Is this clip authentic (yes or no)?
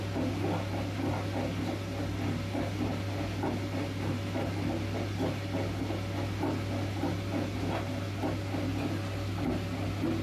yes